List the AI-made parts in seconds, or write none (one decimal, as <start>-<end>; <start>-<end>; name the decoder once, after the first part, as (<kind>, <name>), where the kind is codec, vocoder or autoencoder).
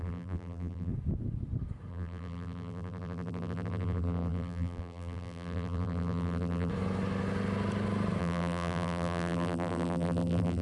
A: 0.0-0.9 (vocoder, BigVGAN v2); 1.9-6.7; 8.2-10.6